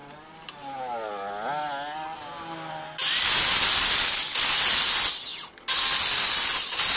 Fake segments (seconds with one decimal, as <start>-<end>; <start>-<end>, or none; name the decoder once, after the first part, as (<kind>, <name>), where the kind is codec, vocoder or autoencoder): none